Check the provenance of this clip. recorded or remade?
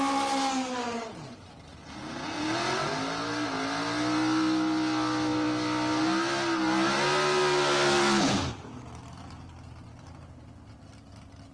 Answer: recorded